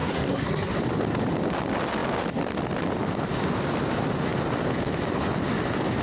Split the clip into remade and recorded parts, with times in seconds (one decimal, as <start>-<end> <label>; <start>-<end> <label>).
0.0-0.7 remade; 0.7-6.0 recorded